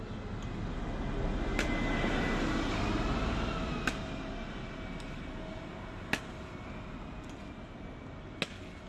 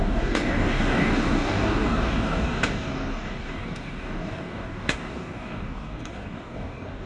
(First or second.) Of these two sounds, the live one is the first